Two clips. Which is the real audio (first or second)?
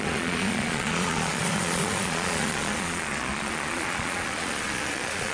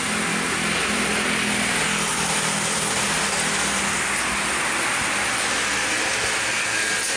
second